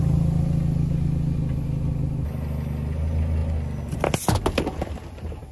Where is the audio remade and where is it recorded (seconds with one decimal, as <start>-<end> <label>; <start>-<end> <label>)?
0.0-5.5 recorded